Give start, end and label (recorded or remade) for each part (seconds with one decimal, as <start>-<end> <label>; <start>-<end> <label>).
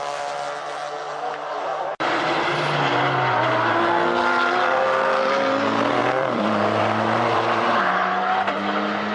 0.0-6.0 recorded; 6.0-7.8 remade; 7.8-9.1 recorded